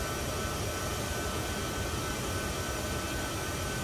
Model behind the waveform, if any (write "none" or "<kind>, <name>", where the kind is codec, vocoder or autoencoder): none